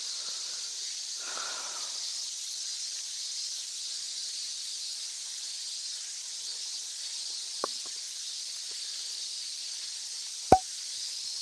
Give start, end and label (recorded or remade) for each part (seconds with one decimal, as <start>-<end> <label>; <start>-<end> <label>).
0.0-11.4 remade